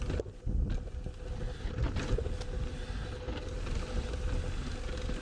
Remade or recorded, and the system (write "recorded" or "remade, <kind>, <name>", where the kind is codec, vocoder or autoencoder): recorded